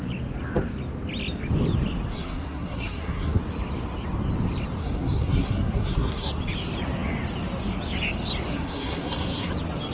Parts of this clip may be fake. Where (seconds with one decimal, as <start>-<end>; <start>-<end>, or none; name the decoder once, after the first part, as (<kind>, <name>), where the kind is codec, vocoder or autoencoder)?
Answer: 2.1-3.4 (codec, SNAC); 4.8-6.3; 8.5-9.5